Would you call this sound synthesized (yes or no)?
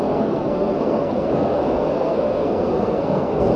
yes